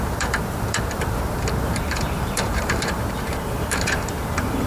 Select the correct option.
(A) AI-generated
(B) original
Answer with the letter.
A